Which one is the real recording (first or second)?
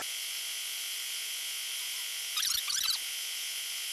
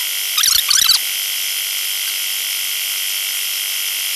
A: second